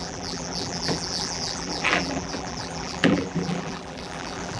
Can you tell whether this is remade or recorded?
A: remade